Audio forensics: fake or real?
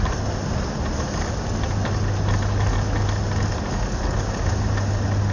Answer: real